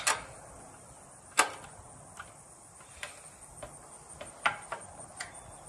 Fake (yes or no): no